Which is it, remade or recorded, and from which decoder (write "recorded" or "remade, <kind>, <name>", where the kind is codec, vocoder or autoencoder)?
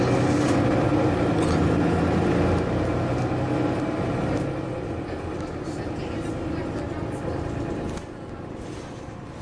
recorded